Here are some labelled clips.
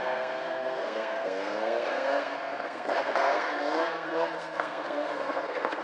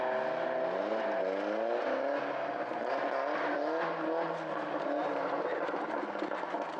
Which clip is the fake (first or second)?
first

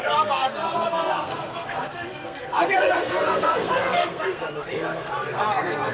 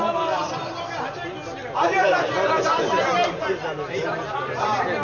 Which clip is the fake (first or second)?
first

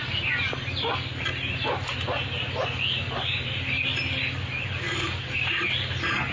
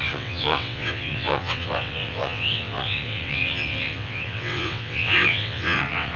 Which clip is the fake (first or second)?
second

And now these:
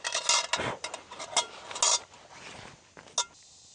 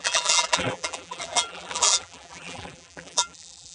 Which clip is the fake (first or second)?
second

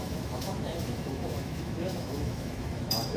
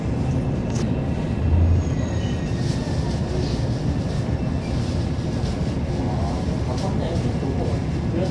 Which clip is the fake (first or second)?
first